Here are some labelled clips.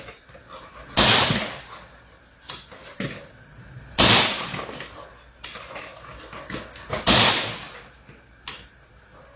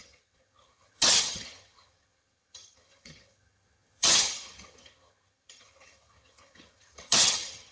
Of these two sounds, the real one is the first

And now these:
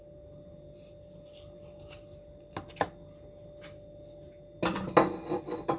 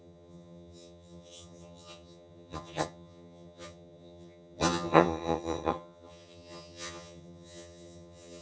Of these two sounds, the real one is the first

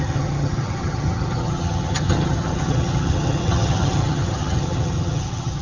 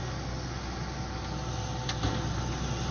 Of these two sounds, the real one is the second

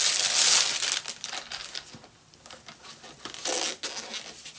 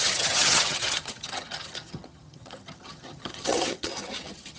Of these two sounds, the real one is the first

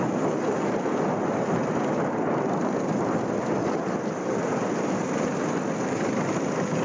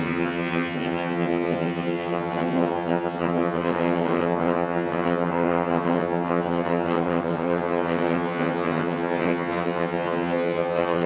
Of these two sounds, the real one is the first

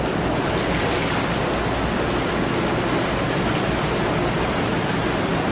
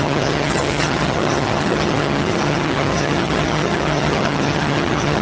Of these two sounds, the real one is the first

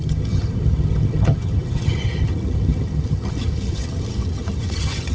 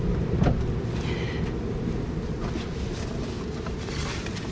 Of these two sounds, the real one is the second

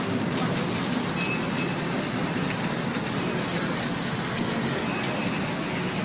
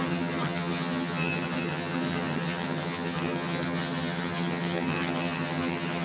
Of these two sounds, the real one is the first